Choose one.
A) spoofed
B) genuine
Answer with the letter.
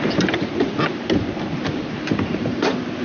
B